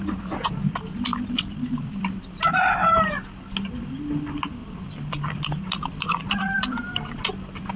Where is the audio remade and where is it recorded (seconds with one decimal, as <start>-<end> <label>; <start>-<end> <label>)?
0.0-1.1 recorded; 1.1-3.0 remade; 3.0-4.6 recorded; 4.6-7.8 remade